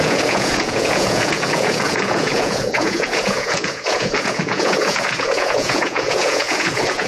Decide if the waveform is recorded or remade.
remade